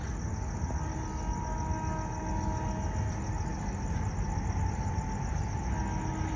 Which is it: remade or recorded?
recorded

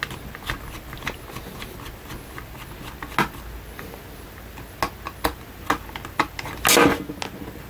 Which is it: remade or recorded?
recorded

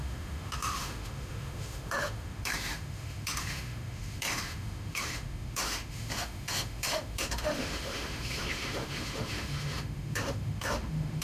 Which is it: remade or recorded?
remade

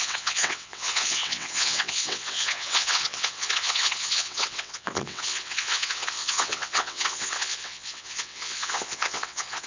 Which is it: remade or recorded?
remade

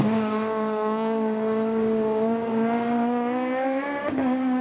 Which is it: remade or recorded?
remade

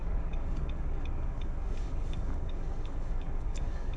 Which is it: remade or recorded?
remade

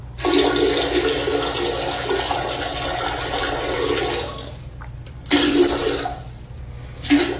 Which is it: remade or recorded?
recorded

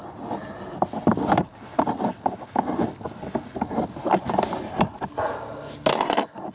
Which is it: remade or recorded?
recorded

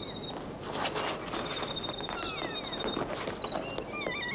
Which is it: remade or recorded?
recorded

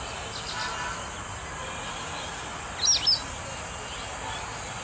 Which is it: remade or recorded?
recorded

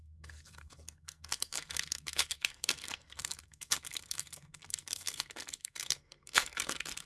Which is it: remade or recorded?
remade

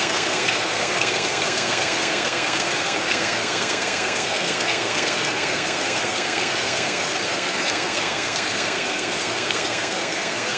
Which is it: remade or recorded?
remade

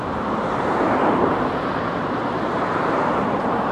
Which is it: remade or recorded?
remade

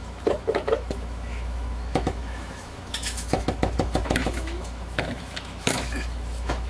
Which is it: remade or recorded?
remade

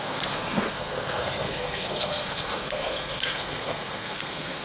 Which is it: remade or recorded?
remade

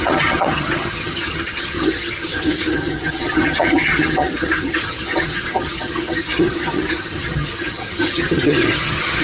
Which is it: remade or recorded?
remade